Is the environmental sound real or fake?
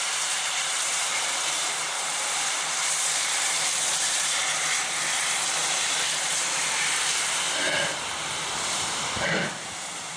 fake